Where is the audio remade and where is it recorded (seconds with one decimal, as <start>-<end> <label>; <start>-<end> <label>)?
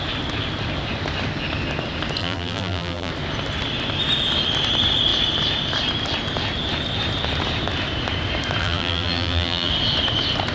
0.0-2.2 recorded; 2.2-3.1 remade; 3.1-8.6 recorded; 8.6-9.7 remade; 9.7-10.5 recorded